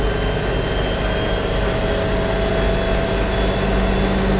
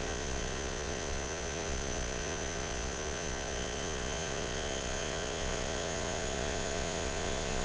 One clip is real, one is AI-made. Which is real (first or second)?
first